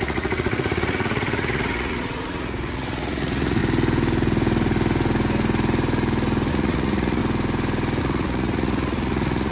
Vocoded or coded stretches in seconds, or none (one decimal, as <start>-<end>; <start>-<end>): 0.0-3.6; 6.5-7.2; 8.0-9.5